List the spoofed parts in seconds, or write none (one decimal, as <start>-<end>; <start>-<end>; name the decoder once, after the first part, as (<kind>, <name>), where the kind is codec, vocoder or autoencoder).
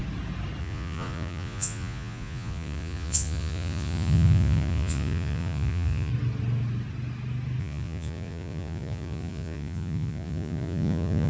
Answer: 0.6-6.1 (vocoder, Vocos); 7.6-11.3